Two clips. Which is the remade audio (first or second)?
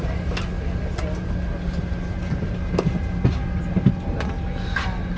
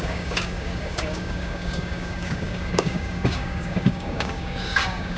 second